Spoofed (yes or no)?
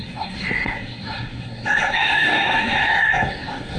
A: yes